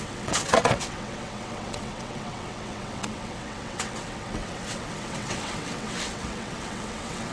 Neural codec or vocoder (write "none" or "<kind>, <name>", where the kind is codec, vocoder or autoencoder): vocoder, WaveNeXt